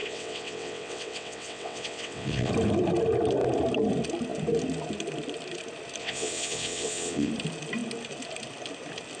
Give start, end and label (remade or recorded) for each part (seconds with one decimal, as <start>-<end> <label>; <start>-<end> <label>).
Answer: 0.0-2.5 remade; 2.5-6.0 recorded; 6.0-7.3 remade; 7.3-9.2 recorded